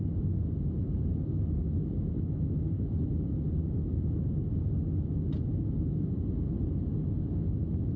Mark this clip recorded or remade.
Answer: recorded